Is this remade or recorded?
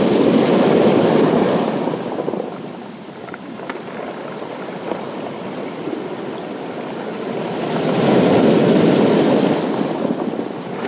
recorded